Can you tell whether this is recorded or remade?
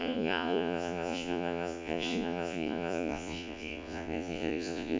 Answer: remade